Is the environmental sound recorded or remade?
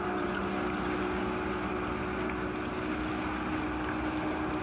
recorded